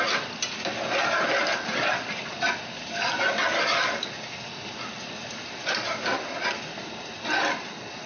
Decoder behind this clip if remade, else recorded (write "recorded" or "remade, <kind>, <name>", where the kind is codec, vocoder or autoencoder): recorded